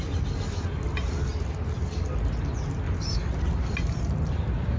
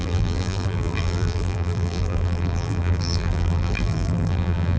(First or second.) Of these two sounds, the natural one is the first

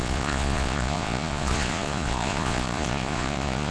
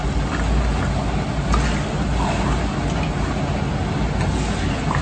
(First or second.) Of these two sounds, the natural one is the second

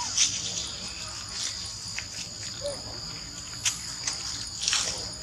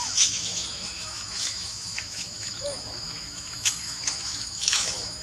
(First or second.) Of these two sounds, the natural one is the first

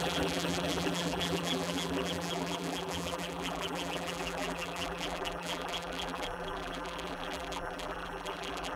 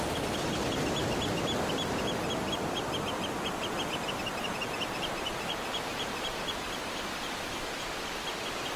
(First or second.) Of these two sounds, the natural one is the second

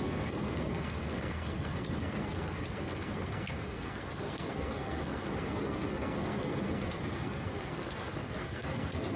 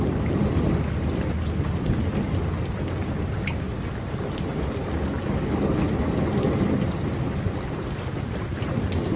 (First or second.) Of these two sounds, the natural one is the second